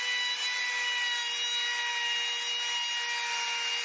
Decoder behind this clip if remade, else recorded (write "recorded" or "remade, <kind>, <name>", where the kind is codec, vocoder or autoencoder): recorded